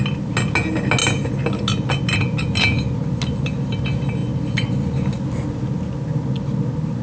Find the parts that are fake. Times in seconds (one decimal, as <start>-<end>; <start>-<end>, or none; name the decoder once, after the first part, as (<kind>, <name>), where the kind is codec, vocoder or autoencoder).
none